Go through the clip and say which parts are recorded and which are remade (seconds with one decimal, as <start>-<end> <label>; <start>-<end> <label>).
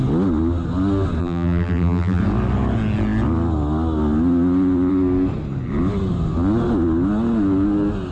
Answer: 0.0-1.2 recorded; 1.2-2.2 remade; 2.2-8.1 recorded